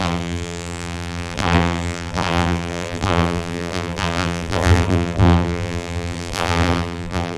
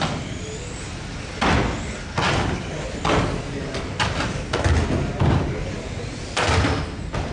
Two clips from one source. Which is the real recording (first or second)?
second